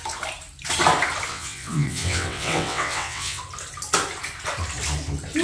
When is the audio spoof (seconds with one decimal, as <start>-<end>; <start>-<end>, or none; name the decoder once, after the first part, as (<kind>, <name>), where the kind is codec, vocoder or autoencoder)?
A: 1.3-3.4 (vocoder, WaveNeXt)